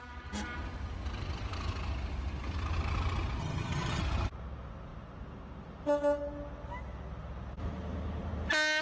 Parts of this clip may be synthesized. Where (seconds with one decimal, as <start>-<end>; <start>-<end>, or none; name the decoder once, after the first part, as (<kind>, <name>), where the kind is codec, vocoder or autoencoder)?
3.4-4.0 (vocoder, HiFi-GAN)